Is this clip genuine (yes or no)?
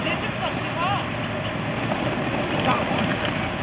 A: yes